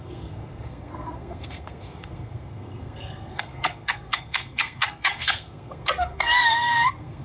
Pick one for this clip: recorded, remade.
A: remade